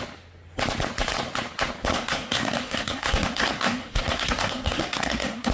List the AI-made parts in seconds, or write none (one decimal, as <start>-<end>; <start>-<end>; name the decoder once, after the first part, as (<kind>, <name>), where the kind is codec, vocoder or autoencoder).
1.9-5.5 (codec, SNAC)